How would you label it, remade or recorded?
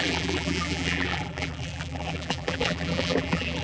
remade